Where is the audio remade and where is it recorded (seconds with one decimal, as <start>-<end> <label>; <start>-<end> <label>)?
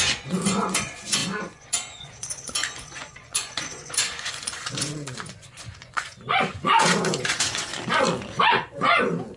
0.0-7.7 remade; 7.7-8.4 recorded; 8.4-9.4 remade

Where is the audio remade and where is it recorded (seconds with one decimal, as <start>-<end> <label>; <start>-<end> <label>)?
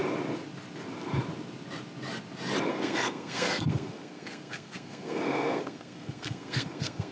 0.0-2.7 recorded; 2.7-7.1 remade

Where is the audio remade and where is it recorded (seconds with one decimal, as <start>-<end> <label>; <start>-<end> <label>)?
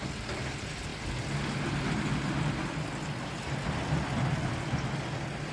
0.0-5.5 recorded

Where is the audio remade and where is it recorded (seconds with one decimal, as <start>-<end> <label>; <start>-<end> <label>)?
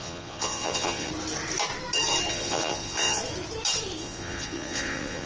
0.0-1.1 remade; 1.1-2.3 recorded; 2.3-3.2 remade; 3.2-4.0 recorded; 4.0-5.3 remade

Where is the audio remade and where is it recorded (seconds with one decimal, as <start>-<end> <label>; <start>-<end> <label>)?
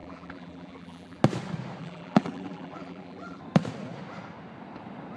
0.0-1.2 remade; 1.2-1.8 recorded; 1.8-3.4 remade; 3.4-5.2 recorded